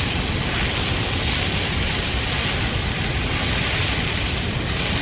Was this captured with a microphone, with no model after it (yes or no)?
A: yes